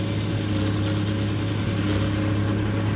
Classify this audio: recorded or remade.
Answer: recorded